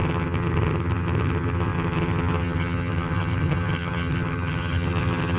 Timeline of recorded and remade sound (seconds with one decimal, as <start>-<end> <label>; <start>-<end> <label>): 0.0-5.4 remade